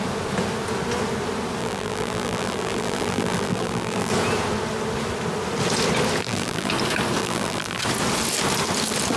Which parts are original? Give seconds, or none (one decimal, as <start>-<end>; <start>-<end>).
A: 0.0-1.6; 4.1-6.2; 6.7-7.2; 7.8-9.2